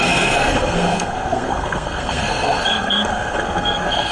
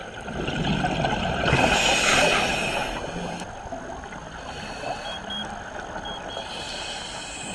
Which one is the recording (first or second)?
second